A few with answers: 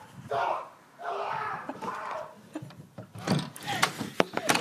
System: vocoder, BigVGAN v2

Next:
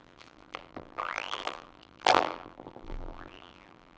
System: vocoder, BigVGAN v2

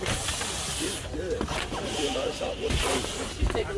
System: none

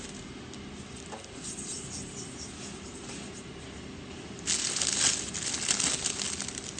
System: none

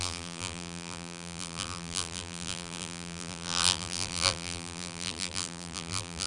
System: vocoder, BigVGAN v2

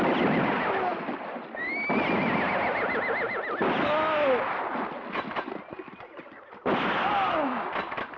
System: none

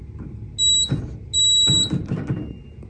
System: none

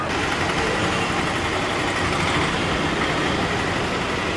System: none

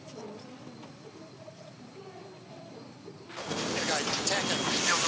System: none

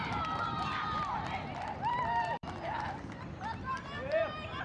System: vocoder, BigVGAN v2